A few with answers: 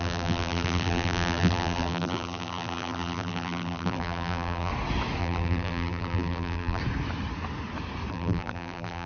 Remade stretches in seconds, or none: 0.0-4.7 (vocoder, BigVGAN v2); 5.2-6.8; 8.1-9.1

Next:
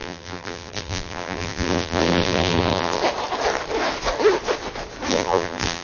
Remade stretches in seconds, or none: 0.0-3.0 (vocoder, BigVGAN v2); 5.1-5.8

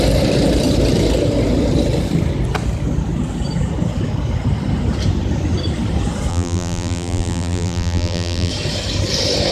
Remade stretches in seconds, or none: 6.3-8.5 (vocoder, BigVGAN v2)

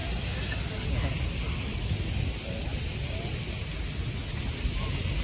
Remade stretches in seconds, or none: 2.7-3.7 (vocoder, BigVGAN v2)